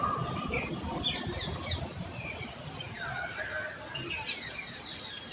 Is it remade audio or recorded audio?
remade